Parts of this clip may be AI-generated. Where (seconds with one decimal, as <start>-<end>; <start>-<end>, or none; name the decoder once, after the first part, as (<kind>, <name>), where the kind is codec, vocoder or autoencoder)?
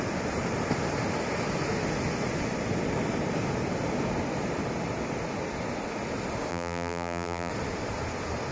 6.5-7.5 (vocoder, BigVGAN v2)